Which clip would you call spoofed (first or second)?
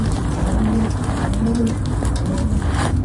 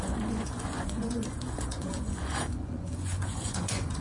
second